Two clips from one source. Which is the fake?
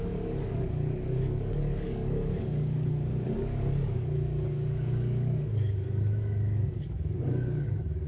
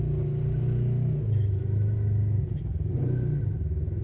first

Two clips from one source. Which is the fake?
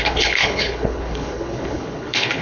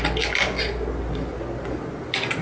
first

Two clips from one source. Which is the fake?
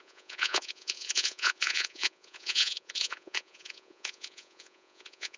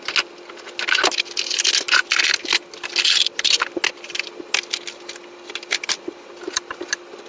first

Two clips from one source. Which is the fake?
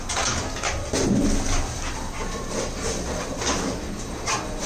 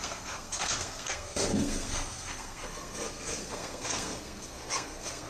second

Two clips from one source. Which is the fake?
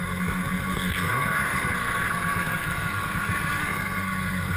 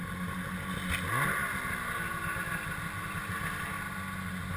first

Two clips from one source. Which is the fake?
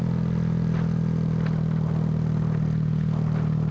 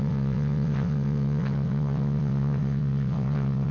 second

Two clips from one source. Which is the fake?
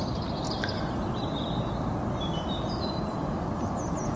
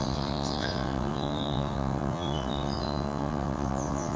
second